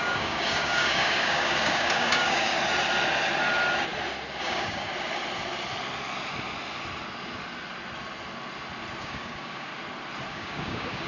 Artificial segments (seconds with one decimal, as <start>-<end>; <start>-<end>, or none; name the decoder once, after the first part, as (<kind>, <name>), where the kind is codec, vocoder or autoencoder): 0.0-2.5 (codec, DAC); 4.4-4.9; 9.0-9.7; 10.3-11.1